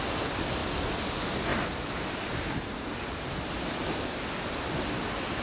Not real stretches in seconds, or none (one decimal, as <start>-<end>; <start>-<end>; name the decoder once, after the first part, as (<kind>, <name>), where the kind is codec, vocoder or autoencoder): 0.6-1.1 (vocoder, BigVGAN v2); 1.5-4.6